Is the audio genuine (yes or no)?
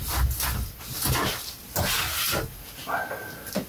yes